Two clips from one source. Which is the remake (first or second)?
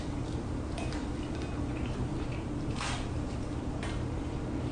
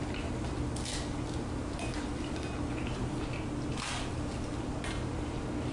first